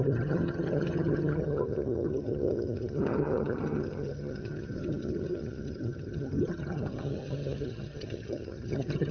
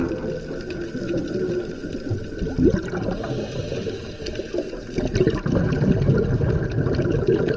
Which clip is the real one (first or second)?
second